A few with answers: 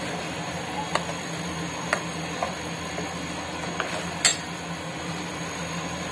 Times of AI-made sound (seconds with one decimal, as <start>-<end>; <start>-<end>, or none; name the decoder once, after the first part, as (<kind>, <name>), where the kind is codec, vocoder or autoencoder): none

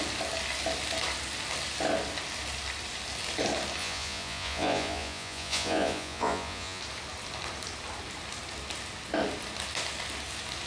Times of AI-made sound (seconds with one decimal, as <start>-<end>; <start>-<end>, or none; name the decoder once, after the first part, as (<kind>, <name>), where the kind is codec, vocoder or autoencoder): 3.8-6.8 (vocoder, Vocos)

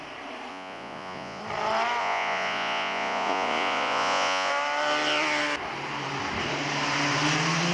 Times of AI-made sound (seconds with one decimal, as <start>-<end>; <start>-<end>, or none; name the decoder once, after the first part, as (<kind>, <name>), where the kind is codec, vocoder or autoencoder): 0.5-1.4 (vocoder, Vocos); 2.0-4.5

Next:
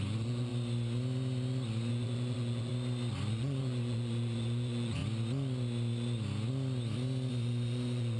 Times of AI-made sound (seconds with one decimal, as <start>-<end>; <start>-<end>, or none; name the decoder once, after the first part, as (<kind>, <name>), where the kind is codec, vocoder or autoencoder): 0.0-0.5 (vocoder, Vocos); 1.9-2.7; 3.3-5.0; 7.3-8.2

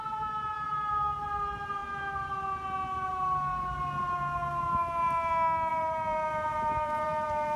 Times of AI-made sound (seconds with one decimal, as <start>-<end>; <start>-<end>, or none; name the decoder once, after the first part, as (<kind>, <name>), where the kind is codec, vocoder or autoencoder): 5.7-7.6 (vocoder, BigVGAN v2)

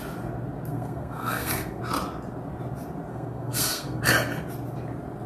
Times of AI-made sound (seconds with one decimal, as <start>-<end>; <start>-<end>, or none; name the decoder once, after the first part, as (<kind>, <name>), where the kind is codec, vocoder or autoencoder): 0.7-1.8 (codec, SNAC); 3.1-4.0

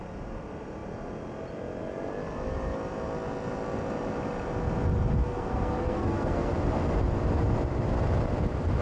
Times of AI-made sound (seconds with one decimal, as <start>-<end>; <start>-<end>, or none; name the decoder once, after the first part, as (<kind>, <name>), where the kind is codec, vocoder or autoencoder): 5.2-6.5 (codec, SNAC)